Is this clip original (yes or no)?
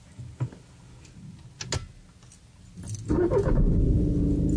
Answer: yes